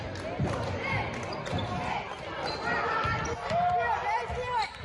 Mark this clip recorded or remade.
recorded